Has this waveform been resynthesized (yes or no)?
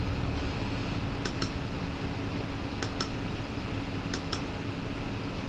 no